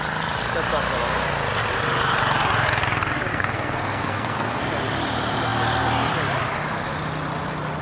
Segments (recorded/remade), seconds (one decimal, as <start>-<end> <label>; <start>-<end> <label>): 0.0-3.3 recorded; 3.3-4.6 remade; 4.6-7.8 recorded